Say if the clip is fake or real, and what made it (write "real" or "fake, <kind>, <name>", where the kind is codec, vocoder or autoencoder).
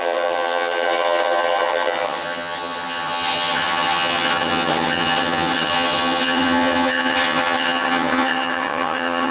fake, vocoder, HiFi-GAN